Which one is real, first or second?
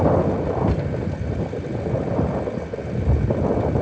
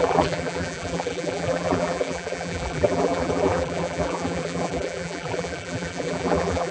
first